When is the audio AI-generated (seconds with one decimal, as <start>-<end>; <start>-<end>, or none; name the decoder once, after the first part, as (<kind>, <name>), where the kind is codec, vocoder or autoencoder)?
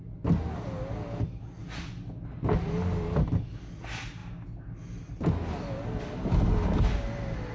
none